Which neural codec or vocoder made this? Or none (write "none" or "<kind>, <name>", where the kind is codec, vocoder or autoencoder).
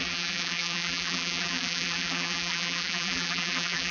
vocoder, BigVGAN v2